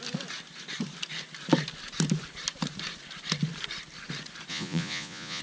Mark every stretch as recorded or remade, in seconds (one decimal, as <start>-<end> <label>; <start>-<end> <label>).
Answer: 0.0-4.5 recorded; 4.5-5.4 remade